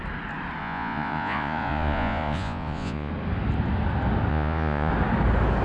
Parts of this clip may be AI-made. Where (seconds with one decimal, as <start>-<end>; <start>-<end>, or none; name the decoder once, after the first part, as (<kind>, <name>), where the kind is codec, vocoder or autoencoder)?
0.6-3.1 (vocoder, Vocos); 4.3-4.9

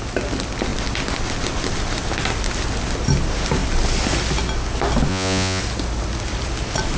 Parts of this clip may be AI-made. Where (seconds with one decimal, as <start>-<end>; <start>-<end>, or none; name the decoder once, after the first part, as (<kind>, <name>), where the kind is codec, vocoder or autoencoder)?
5.1-5.6 (vocoder, Vocos)

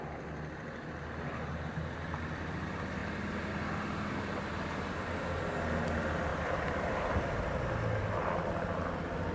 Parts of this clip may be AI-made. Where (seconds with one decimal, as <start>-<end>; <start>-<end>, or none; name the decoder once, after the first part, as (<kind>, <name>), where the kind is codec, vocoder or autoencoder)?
6.3-8.0 (vocoder, BigVGAN v2)

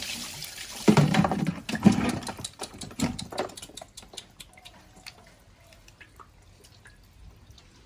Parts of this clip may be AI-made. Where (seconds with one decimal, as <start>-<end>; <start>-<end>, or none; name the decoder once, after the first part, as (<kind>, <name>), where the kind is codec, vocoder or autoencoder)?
0.4-3.2 (vocoder, BigVGAN v2)

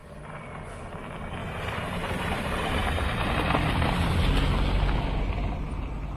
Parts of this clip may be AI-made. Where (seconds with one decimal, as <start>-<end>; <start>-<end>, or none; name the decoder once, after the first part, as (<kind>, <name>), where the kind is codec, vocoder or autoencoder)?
1.4-4.2 (vocoder, BigVGAN v2)

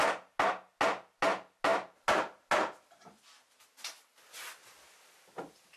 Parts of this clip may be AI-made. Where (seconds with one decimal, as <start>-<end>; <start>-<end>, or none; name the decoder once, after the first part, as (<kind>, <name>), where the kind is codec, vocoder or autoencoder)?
none